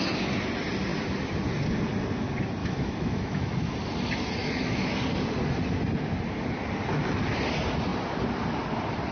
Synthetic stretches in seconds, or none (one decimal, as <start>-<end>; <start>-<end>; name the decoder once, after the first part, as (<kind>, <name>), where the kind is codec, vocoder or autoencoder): 2.6-3.5 (autoencoder, DAC-VAE); 4.4-4.9